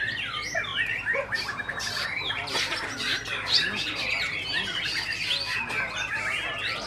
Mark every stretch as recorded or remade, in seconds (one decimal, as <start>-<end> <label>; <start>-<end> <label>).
0.0-0.7 recorded; 0.7-4.8 remade; 4.8-6.9 recorded